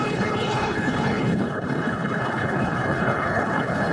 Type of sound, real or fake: fake